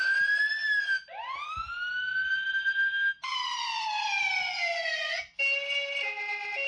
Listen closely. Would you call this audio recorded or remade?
recorded